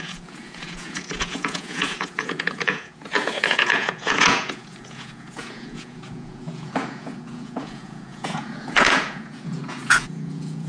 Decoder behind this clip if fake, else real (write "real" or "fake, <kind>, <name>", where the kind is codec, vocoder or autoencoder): fake, vocoder, Vocos